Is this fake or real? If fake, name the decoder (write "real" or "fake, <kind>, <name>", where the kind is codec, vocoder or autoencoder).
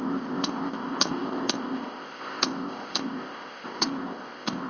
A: fake, codec, ZipCodec